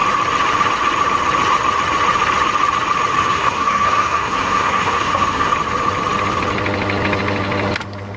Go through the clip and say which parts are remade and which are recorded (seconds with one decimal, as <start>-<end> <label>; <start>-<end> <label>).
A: 0.0-3.2 recorded; 3.2-5.5 remade; 5.5-8.2 recorded